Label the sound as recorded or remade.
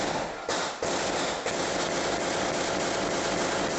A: recorded